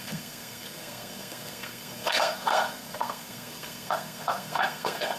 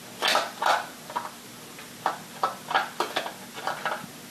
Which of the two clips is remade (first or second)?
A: first